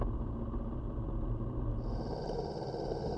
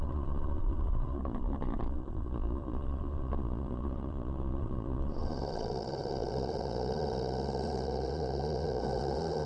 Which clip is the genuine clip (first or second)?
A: first